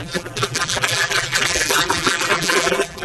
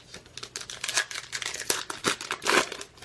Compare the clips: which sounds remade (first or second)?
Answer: first